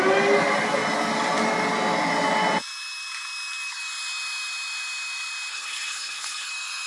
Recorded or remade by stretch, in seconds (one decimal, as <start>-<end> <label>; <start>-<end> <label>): 0.0-5.5 recorded; 5.5-6.5 remade; 6.5-6.9 recorded